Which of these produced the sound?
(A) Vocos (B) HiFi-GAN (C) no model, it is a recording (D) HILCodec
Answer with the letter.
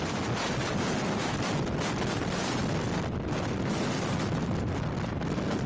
C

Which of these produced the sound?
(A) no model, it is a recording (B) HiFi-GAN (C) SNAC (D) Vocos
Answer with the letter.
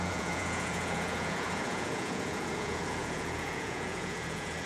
D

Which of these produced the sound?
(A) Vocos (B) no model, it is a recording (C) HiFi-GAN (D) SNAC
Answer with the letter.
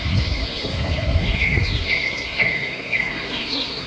D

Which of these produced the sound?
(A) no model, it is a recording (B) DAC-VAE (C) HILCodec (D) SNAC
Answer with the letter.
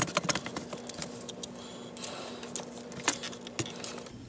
A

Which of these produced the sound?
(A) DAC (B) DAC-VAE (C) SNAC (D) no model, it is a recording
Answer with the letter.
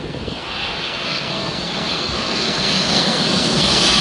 C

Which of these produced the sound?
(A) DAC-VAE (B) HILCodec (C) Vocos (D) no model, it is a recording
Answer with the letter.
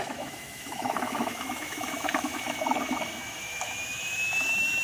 A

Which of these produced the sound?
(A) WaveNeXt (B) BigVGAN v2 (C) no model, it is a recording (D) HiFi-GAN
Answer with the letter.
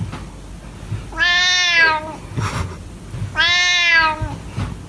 C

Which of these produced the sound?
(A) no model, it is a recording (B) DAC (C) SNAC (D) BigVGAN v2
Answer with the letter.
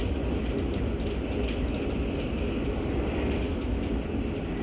A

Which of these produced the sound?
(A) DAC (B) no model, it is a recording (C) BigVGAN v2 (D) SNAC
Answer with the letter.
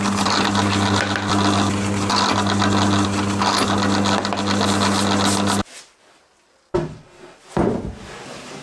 B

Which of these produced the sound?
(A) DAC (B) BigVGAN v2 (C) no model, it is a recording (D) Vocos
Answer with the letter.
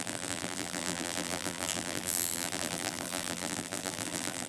B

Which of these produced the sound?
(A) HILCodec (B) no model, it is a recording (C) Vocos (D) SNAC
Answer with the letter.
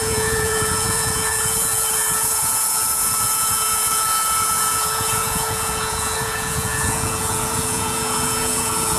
C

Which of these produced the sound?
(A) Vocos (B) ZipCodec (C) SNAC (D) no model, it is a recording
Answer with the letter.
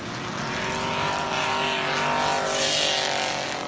D